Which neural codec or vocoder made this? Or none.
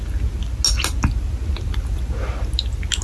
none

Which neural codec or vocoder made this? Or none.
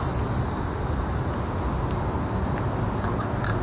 none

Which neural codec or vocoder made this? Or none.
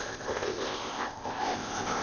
codec, ZipCodec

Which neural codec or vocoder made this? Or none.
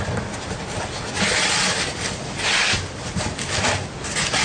none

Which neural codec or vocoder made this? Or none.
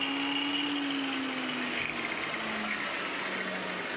none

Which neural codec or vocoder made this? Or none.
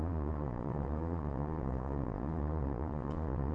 vocoder, Vocos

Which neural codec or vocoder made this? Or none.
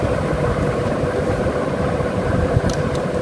vocoder, BigVGAN v2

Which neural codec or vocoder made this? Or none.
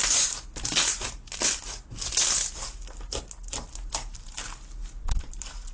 none